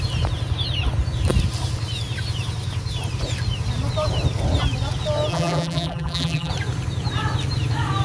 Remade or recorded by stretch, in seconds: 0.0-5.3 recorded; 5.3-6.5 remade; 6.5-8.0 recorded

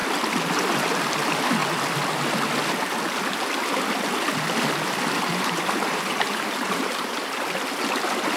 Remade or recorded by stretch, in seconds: 0.0-5.3 recorded; 5.3-7.4 remade; 7.4-8.4 recorded